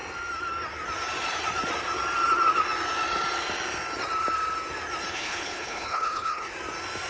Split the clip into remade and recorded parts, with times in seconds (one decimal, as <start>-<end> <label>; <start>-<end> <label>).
0.0-5.1 recorded; 5.1-6.5 remade; 6.5-7.1 recorded